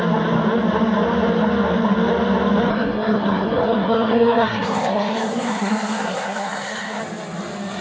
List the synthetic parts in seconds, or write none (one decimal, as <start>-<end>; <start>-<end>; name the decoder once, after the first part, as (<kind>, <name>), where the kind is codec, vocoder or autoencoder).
2.7-7.0 (codec, SNAC)